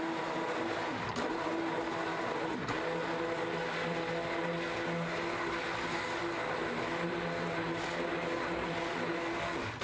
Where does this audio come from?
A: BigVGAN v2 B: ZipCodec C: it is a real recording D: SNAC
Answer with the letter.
C